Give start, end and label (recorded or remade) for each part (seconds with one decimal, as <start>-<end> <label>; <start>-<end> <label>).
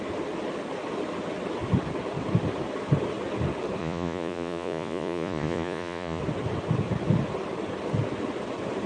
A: 0.0-3.8 recorded; 3.8-6.2 remade; 6.2-8.9 recorded